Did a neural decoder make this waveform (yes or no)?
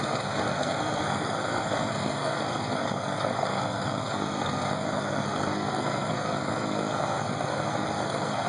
yes